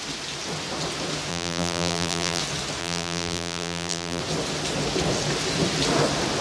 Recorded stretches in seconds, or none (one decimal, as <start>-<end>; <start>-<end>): 0.0-1.3; 2.4-2.8; 4.2-6.4